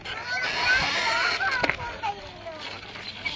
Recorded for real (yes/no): yes